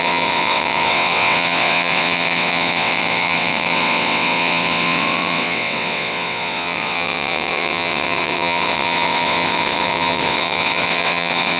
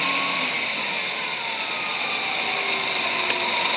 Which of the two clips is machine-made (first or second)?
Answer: first